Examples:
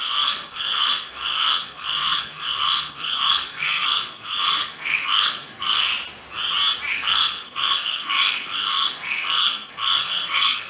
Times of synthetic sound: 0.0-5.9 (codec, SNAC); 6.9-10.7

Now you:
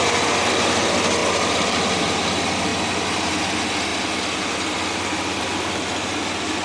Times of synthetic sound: 2.7-3.3 (vocoder, BigVGAN v2)

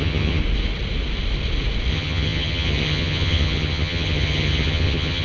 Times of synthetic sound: 0.0-0.4 (vocoder, HiFi-GAN); 1.9-5.2

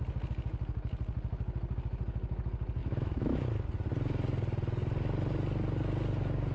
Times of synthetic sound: 2.8-3.4 (autoencoder, DAC-VAE)

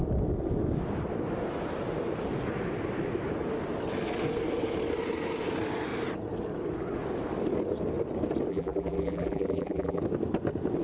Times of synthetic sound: 8.5-10.0 (vocoder, BigVGAN v2)

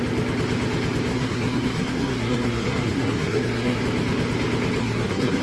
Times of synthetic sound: 1.1-3.8 (codec, SNAC); 4.8-5.4

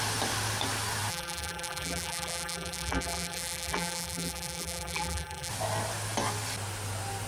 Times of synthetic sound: 1.1-5.5 (vocoder, BigVGAN v2)

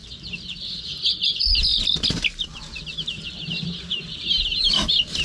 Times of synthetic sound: none